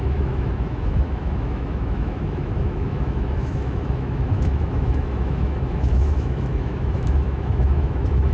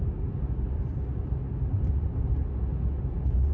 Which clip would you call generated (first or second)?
first